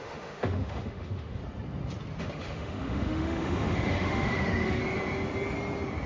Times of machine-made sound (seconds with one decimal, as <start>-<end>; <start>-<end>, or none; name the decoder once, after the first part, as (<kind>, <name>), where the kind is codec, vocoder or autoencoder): 0.0-1.4 (autoencoder, DAC-VAE); 2.2-4.8